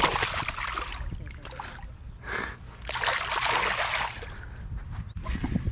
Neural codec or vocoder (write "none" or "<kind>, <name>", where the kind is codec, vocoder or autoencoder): none